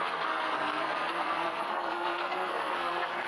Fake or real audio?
fake